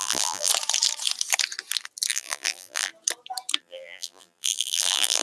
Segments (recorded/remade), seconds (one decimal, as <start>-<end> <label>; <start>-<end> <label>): 0.0-0.5 remade; 0.5-2.1 recorded; 2.1-2.9 remade; 2.9-3.6 recorded; 3.6-5.2 remade